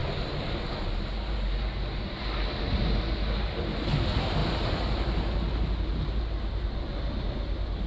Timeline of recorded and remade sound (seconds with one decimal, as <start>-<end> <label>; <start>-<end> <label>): 0.0-7.9 recorded